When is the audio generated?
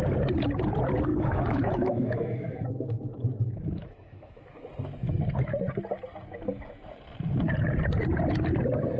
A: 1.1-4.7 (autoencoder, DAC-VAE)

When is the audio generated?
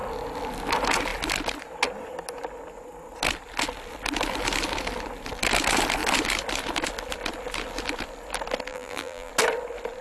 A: 8.7-9.3 (vocoder, BigVGAN v2)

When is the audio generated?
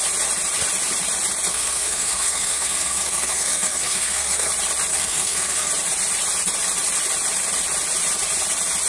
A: 1.5-4.5 (codec, SNAC); 4.9-5.7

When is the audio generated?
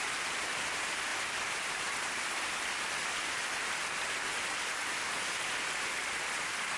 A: 1.1-2.8 (vocoder, BigVGAN v2); 6.0-6.8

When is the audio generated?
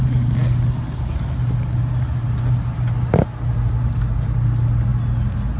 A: none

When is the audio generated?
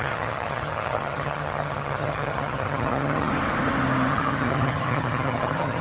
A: 0.0-3.3 (vocoder, HiFi-GAN); 4.1-5.8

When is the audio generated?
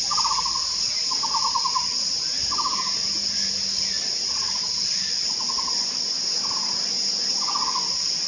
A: none